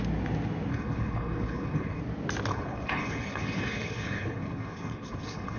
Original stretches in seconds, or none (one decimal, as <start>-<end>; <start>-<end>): 0.0-0.7; 2.0-2.5